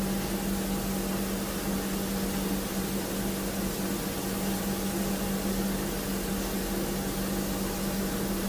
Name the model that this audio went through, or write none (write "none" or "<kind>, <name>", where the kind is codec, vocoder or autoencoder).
none